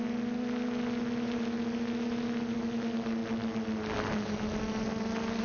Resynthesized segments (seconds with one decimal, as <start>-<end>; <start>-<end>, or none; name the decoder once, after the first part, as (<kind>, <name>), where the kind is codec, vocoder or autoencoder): none

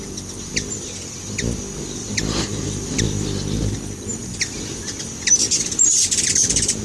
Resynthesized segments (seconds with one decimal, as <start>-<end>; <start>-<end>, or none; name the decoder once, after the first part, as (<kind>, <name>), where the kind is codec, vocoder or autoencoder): 2.0-3.0 (vocoder, BigVGAN v2)

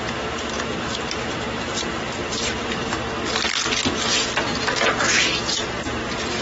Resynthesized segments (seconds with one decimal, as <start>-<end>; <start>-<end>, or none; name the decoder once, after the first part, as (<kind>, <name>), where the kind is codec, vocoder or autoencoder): 0.0-2.9 (vocoder, BigVGAN v2); 5.6-6.4

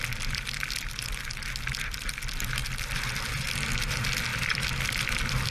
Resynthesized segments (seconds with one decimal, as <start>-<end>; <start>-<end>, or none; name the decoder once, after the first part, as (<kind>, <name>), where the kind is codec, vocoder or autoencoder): 4.3-5.5 (vocoder, BigVGAN v2)